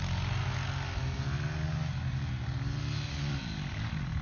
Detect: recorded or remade recorded